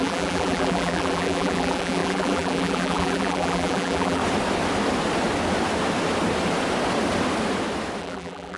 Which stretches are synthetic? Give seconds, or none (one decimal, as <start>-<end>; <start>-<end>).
0.0-4.2; 8.0-8.6